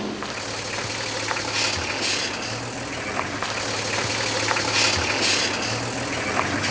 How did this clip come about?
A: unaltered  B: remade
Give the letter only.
A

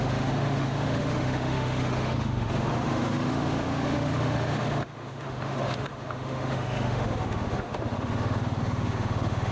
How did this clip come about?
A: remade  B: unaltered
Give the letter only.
A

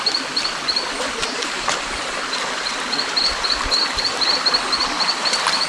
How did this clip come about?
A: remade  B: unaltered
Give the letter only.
B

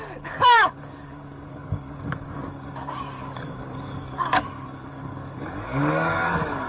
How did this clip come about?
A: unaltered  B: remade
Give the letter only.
B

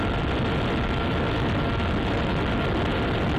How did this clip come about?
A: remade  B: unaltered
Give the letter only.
B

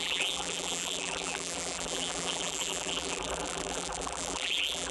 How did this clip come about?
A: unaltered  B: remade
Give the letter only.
B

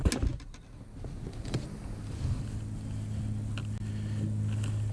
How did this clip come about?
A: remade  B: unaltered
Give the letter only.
B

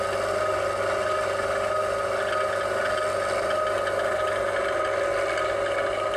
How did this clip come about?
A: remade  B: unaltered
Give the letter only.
B